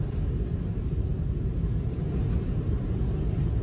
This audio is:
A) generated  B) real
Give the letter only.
B